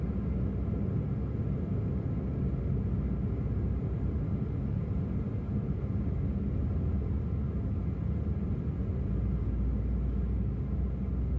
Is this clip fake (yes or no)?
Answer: no